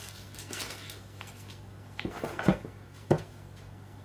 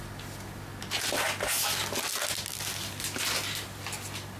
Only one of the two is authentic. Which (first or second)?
second